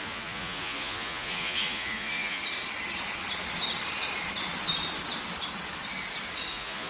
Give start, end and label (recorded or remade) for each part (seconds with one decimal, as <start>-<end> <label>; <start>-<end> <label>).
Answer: 0.0-2.4 remade; 2.4-6.5 recorded; 6.5-6.9 remade